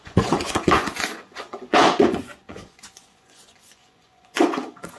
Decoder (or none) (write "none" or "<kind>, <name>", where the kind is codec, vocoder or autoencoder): vocoder, Vocos